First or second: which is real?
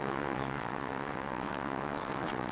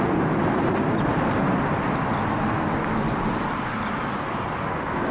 second